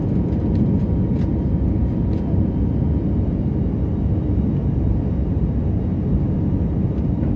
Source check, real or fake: real